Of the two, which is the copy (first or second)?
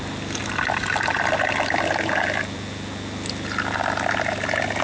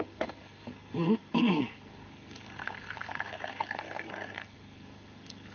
second